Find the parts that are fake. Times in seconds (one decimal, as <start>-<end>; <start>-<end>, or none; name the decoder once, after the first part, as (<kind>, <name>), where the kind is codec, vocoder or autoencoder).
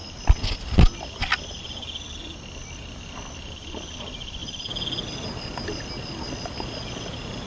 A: none